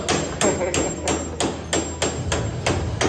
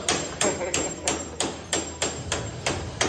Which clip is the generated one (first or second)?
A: second